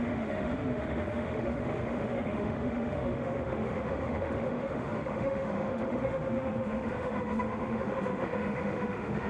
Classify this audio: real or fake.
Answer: fake